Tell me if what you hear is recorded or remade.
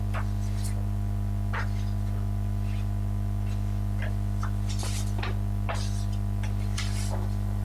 recorded